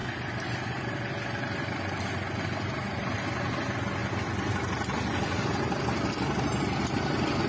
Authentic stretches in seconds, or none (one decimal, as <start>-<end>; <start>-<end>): 0.0-7.5